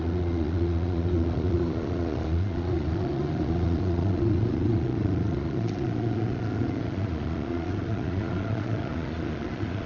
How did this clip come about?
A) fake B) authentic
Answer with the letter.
A